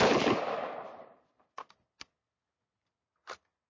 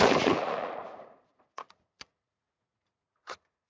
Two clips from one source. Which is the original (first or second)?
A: first